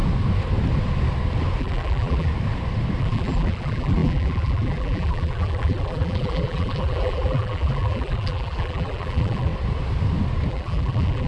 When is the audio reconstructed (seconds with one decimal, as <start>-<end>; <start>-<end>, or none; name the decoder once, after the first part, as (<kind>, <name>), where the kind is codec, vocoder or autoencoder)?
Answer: 1.6-2.3 (vocoder, BigVGAN v2); 3.0-9.5; 10.5-11.3